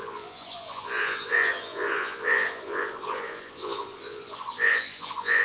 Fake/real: fake